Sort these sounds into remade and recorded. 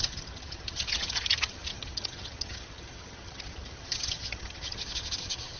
remade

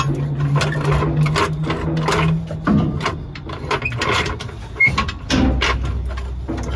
recorded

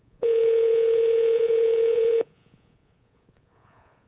remade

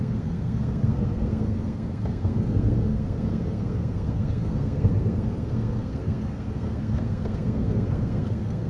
remade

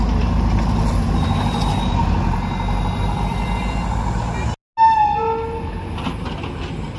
recorded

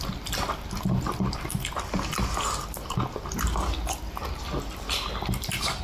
recorded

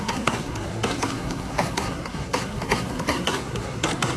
remade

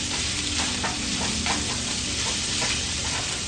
recorded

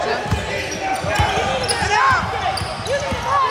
recorded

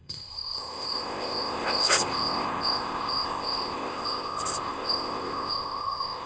remade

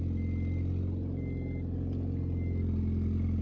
recorded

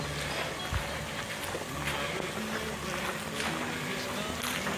recorded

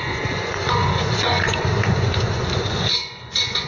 remade